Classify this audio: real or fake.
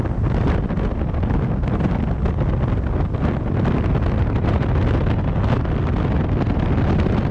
real